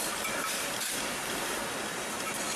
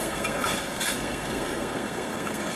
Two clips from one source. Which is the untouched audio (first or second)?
first